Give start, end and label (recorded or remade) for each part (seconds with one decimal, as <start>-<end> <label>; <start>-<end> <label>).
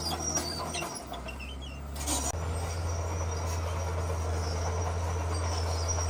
0.0-6.1 recorded